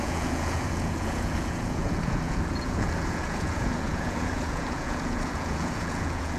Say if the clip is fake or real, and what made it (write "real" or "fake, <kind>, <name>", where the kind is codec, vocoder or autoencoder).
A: fake, vocoder, Vocos